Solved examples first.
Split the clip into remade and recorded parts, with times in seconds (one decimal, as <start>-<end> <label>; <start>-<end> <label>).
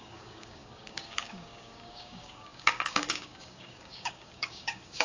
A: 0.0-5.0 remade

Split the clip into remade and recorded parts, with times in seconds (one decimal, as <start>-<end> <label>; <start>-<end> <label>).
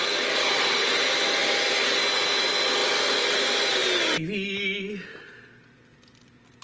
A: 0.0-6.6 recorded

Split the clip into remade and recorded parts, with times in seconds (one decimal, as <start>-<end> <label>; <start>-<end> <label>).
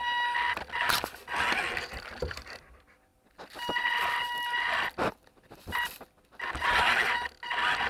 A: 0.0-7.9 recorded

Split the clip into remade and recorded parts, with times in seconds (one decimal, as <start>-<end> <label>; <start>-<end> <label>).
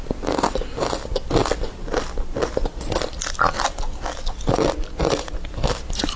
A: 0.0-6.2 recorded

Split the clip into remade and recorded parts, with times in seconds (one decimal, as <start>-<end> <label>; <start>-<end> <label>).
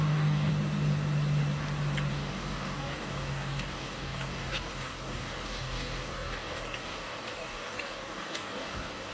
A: 0.0-0.5 remade; 0.5-2.1 recorded; 2.1-9.1 remade